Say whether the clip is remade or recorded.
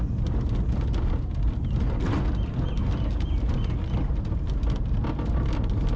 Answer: recorded